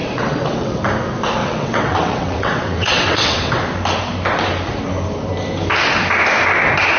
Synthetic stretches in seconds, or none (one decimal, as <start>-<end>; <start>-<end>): 0.0-0.9; 1.4-3.5